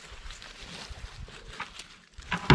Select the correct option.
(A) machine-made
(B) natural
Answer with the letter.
B